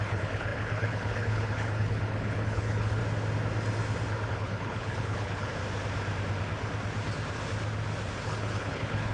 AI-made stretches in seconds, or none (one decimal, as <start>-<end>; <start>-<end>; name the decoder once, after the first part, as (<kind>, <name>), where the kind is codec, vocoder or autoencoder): 0.0-3.0 (codec, HILCodec); 4.3-5.6; 8.2-9.1